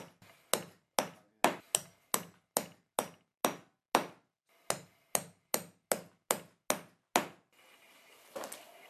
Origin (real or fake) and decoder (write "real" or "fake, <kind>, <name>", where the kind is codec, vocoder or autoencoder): real